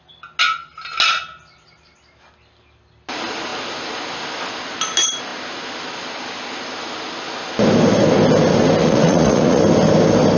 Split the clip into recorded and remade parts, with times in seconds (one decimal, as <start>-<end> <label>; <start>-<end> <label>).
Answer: 0.0-8.8 recorded; 8.8-9.6 remade; 9.6-10.4 recorded